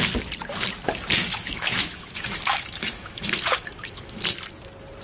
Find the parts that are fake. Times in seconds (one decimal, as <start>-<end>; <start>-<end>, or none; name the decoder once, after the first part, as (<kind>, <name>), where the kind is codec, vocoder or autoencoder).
1.2-4.2 (autoencoder, DAC-VAE)

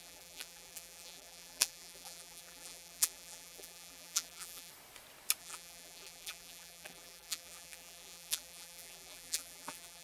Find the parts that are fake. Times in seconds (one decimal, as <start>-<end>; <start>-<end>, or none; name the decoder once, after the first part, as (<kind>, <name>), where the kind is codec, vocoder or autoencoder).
0.0-4.7 (vocoder, BigVGAN v2); 5.4-10.0

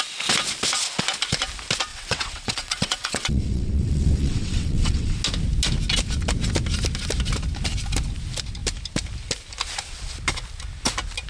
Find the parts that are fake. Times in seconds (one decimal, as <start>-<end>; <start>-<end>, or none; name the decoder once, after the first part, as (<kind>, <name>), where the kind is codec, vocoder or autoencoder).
1.9-5.2 (vocoder, WaveNeXt)

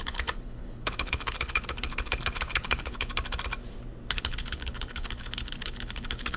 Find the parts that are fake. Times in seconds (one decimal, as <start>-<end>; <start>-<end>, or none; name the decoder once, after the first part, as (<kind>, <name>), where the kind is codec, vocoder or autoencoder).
0.0-3.1 (codec, HILCodec); 4.1-6.4